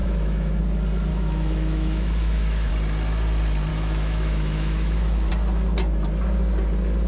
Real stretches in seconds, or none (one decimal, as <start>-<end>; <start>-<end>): 0.6-1.1; 2.7-3.7; 5.3-7.1